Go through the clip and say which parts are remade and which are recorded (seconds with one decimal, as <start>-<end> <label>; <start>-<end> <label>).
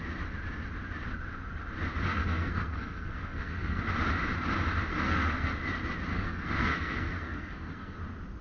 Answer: 0.0-2.1 recorded; 2.1-3.8 remade; 3.8-4.9 recorded; 4.9-5.5 remade; 5.5-6.1 recorded; 6.1-8.0 remade; 8.0-8.4 recorded